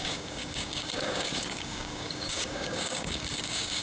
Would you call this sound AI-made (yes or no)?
yes